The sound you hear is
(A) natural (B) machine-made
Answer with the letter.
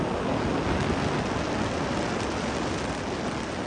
A